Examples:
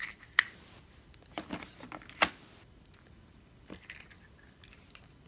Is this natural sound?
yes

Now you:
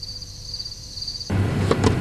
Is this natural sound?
no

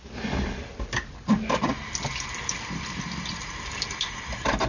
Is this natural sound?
yes